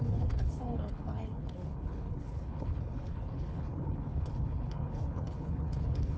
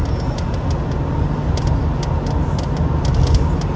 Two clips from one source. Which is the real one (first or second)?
second